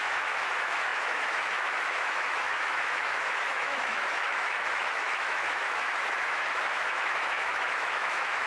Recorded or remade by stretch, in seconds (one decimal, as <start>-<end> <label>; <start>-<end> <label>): 0.0-8.5 remade